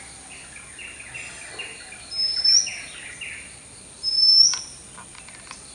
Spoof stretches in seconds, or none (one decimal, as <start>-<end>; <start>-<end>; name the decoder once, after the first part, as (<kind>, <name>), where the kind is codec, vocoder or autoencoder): none